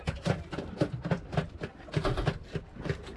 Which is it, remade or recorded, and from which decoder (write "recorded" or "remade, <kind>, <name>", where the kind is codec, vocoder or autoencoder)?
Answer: recorded